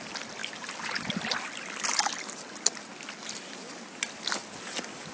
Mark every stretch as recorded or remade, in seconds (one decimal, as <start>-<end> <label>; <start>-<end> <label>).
0.0-5.1 recorded